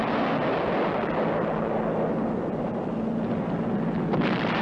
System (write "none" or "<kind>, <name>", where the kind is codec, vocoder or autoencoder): none